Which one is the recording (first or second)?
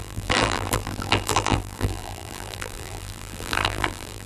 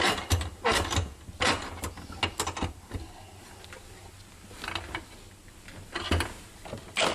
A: second